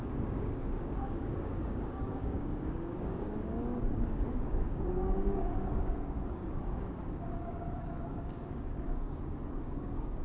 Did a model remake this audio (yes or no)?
yes